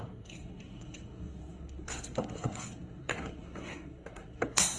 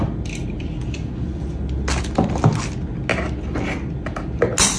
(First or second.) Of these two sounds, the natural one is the second